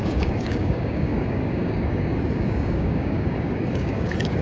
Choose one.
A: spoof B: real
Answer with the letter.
A